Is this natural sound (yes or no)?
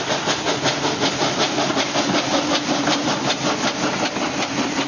yes